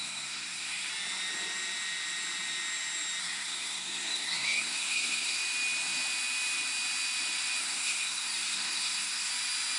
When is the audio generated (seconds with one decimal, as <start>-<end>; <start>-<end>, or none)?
0.0-0.9; 3.2-5.4; 7.6-9.3